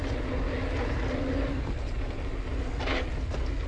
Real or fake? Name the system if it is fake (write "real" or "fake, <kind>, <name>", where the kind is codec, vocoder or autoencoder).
real